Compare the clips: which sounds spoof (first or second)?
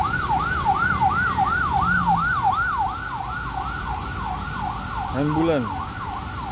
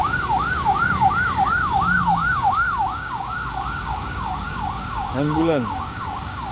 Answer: second